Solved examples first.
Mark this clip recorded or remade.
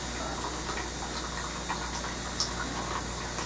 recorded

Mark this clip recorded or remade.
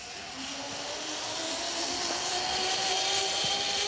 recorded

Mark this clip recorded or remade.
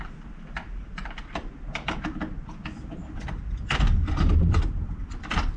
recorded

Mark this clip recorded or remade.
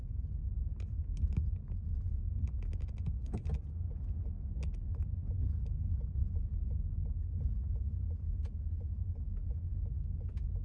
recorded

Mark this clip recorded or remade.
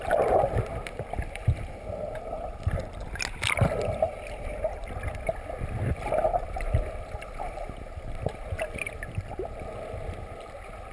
recorded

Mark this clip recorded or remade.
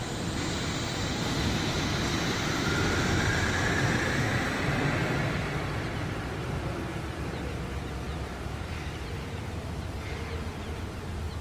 recorded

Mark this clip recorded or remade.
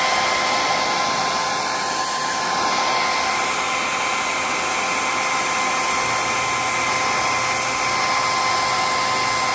recorded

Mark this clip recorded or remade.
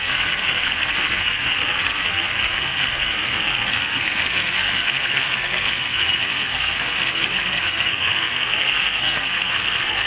remade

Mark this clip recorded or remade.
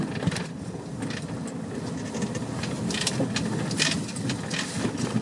recorded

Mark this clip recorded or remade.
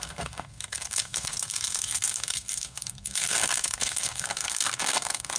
remade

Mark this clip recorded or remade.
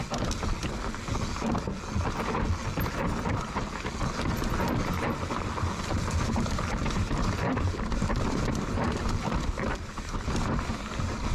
recorded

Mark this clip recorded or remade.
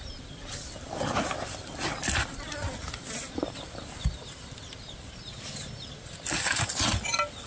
recorded